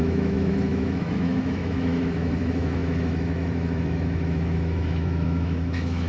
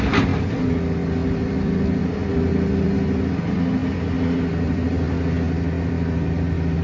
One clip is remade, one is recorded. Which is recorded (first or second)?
second